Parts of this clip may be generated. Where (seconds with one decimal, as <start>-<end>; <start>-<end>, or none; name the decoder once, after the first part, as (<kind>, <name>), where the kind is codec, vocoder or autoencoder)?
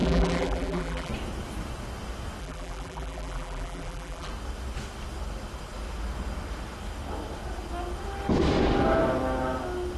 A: 0.0-1.1 (vocoder, BigVGAN v2); 2.4-4.3